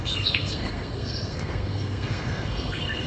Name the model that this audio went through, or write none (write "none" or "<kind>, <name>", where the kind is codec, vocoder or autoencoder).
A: codec, SNAC